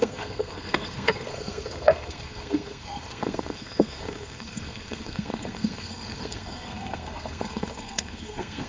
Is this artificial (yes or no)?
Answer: yes